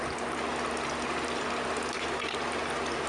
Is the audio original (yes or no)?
yes